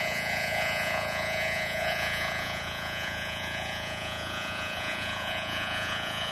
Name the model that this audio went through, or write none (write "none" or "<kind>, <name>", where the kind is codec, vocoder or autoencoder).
vocoder, Vocos